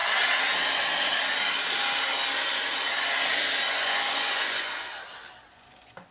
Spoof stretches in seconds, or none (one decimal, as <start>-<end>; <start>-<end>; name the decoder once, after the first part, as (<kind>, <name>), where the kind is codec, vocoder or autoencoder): 3.7-4.9 (vocoder, Vocos); 5.5-6.1